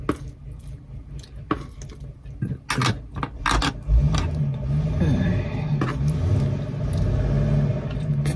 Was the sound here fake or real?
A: real